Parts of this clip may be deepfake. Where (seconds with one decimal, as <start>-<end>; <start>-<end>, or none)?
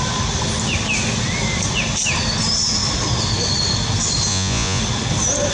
4.3-4.8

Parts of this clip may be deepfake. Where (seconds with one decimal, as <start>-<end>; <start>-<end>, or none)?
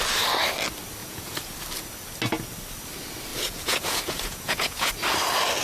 1.0-1.6; 3.3-4.9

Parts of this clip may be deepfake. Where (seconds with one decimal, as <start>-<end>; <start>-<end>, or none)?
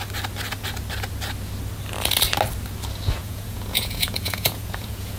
3.2-5.2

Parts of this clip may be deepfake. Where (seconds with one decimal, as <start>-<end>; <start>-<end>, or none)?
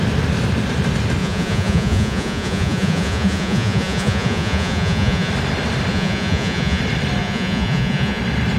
1.2-5.3; 5.9-6.8; 7.2-8.2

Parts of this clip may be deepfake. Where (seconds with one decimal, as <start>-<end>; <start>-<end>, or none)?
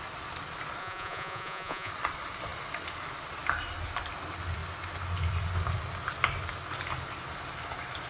0.8-1.9